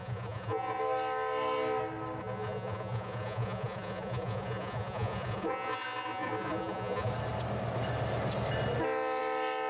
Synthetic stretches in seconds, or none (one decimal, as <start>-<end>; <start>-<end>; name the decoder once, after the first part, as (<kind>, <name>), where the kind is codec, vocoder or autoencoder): 0.0-0.8 (vocoder, Vocos); 2.2-7.1